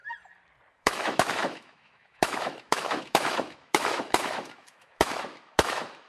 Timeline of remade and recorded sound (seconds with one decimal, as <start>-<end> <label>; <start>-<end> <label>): 0.0-0.7 recorded; 0.7-6.1 remade